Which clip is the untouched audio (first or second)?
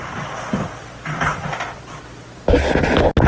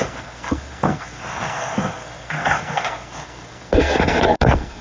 first